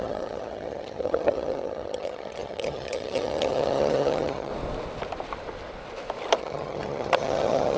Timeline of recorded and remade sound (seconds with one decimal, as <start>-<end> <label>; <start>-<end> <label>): 0.0-4.5 remade; 4.5-6.4 recorded; 6.4-7.8 remade